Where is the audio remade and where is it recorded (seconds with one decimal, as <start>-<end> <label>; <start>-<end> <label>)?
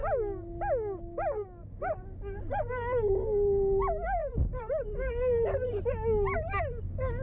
0.0-1.6 recorded; 1.6-2.6 remade; 2.6-4.2 recorded; 4.2-5.9 remade; 5.9-7.2 recorded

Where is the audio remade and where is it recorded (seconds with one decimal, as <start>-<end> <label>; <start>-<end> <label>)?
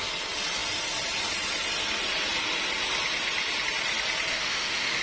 0.0-4.3 recorded; 4.3-5.0 remade